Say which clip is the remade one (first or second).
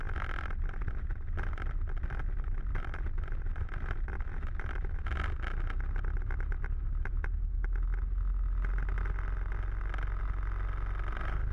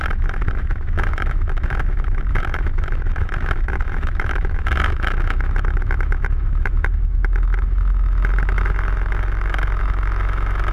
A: second